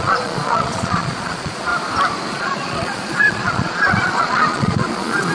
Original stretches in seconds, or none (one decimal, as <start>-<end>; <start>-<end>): 1.7-2.3